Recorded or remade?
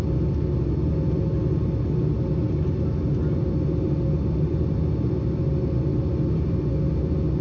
recorded